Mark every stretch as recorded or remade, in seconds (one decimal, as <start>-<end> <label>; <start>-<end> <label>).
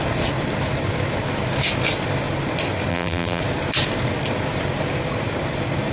0.0-2.9 recorded; 2.9-3.4 remade; 3.4-5.9 recorded